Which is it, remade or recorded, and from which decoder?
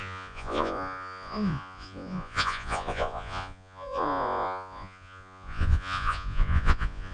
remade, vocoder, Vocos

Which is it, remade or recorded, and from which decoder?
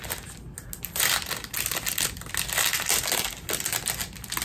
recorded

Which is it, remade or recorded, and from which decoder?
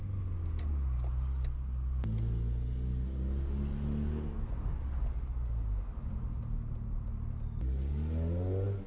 recorded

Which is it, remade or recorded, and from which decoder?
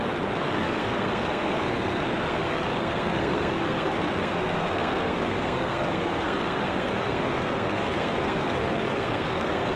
remade, codec, SNAC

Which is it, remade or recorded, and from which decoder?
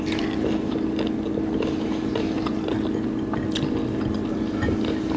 recorded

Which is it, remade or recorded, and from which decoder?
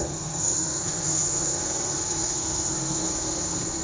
remade, codec, SNAC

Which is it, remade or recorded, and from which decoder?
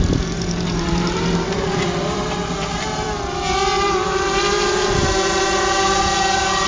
remade, vocoder, BigVGAN v2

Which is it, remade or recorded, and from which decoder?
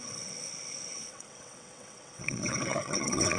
remade, vocoder, WaveNeXt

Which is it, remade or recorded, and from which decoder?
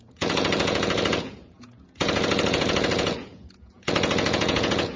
remade, vocoder, Vocos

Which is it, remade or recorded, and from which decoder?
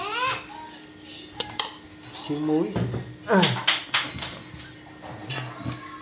recorded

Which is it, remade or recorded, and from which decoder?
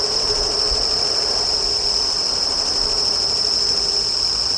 recorded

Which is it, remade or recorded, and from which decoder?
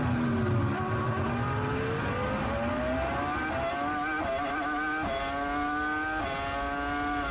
recorded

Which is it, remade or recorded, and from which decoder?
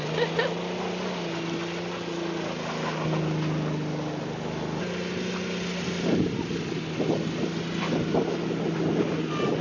recorded